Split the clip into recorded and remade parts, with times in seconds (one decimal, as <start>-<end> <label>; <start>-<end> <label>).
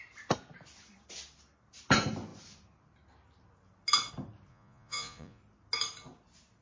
0.0-4.5 recorded; 4.5-5.4 remade; 5.4-6.6 recorded